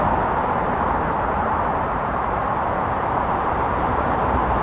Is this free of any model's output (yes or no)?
no